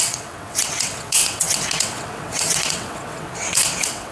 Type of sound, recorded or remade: remade